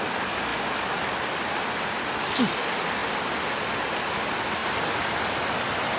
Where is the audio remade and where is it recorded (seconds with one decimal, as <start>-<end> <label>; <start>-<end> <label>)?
0.0-6.0 recorded